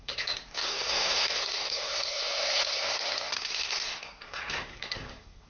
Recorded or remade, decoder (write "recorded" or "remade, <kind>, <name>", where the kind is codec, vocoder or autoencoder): remade, codec, SNAC